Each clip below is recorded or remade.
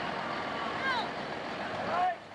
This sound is recorded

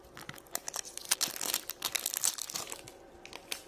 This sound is recorded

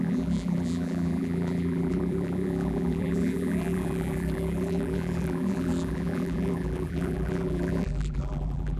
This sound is remade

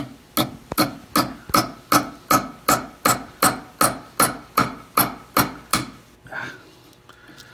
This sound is recorded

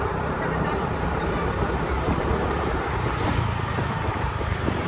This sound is remade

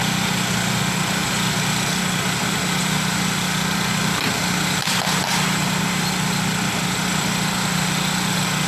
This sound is recorded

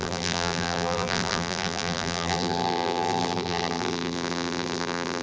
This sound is remade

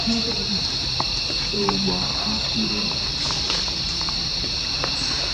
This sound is remade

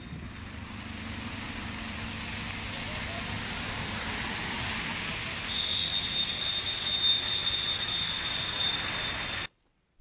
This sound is recorded